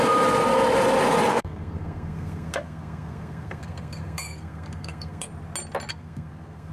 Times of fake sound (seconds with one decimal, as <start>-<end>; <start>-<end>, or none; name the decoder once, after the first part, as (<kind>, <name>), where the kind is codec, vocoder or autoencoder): 1.3-5.3 (codec, SNAC); 5.9-6.7